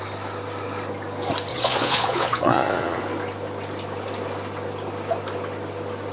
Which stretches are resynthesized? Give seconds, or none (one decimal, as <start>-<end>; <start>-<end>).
1.5-3.0